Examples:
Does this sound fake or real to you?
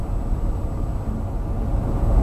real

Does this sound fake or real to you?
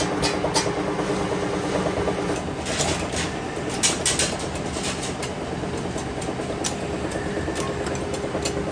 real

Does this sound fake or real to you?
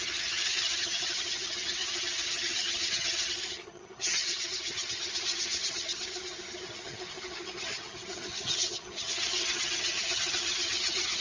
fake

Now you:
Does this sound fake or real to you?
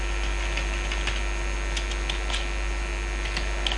real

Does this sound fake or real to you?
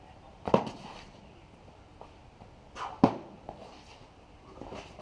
real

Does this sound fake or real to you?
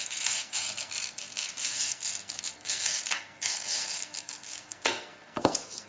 fake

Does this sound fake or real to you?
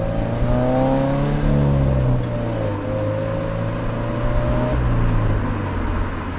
real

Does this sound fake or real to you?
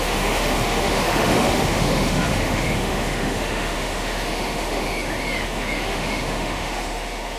fake